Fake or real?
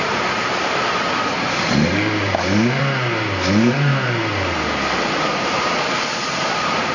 fake